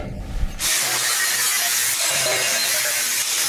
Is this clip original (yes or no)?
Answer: yes